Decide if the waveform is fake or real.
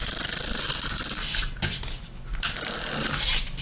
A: real